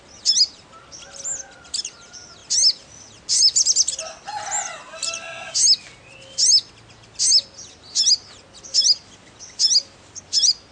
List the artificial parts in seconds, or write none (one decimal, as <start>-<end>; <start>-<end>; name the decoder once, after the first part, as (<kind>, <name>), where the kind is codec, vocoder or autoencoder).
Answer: none